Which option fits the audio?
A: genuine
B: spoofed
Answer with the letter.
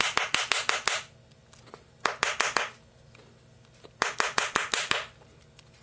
A